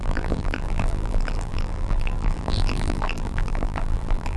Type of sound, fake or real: fake